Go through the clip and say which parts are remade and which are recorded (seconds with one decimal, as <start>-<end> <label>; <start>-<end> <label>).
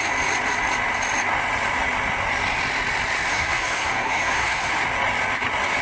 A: 0.0-3.3 recorded; 3.3-4.7 remade; 4.7-5.8 recorded